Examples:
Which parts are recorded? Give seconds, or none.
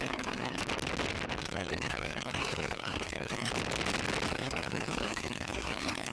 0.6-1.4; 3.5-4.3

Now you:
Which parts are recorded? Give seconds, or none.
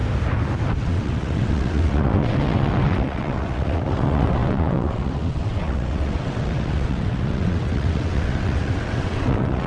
0.0-0.8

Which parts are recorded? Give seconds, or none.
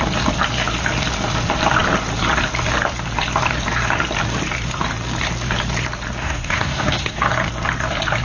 0.0-6.2; 7.2-8.2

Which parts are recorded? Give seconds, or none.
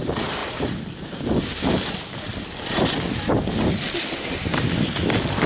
0.0-5.5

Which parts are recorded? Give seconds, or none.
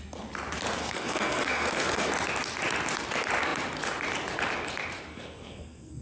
0.0-0.8; 2.1-5.1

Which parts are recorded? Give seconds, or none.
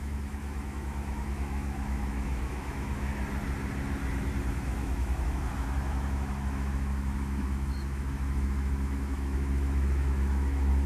3.1-4.5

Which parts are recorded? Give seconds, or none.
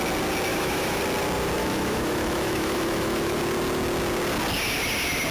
0.0-0.5; 1.0-1.6; 3.4-5.3